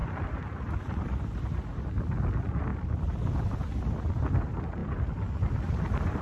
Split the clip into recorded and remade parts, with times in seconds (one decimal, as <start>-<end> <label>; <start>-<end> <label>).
0.0-1.8 remade; 1.8-4.8 recorded; 4.8-6.2 remade